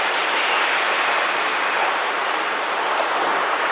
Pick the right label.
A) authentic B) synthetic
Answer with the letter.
A